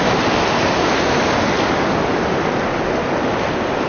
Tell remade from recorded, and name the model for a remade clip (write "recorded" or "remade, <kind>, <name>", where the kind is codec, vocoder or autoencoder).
recorded